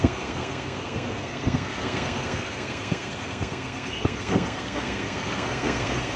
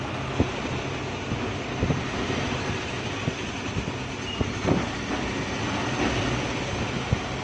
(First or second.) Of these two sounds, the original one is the second